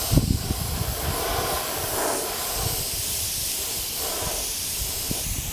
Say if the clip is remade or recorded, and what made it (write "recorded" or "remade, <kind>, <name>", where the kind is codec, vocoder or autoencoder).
remade, vocoder, BigVGAN v2